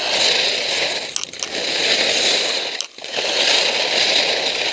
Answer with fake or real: real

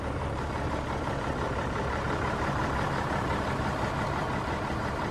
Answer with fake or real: fake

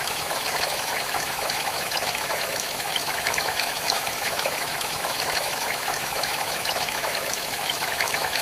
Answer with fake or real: fake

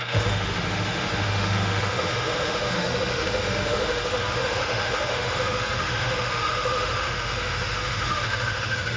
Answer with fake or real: fake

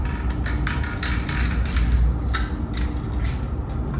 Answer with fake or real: real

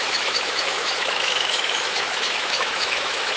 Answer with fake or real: fake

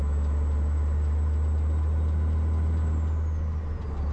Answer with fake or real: real